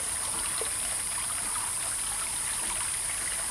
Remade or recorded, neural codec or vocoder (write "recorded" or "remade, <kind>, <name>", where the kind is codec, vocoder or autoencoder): remade, vocoder, BigVGAN v2